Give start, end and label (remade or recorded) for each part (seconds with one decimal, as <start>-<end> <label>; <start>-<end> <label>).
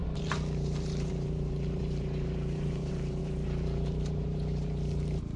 0.0-5.4 remade